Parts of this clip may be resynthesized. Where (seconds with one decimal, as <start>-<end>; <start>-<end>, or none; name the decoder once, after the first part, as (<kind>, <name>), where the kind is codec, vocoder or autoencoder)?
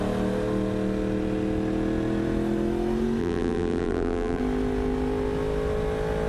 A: 3.2-4.4 (vocoder, BigVGAN v2)